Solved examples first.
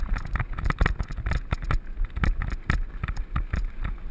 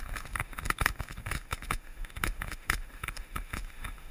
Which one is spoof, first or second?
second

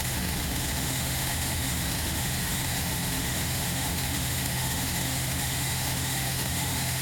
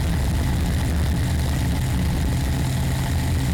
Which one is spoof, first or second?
first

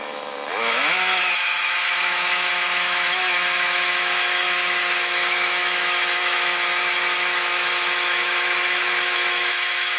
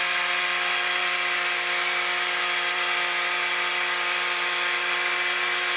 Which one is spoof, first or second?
first